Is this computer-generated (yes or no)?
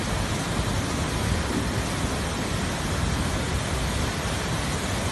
no